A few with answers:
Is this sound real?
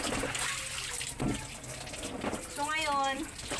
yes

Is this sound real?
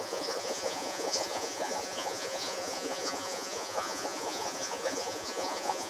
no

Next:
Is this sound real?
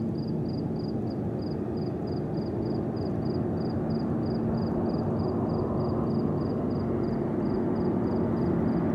yes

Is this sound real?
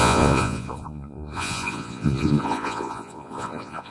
no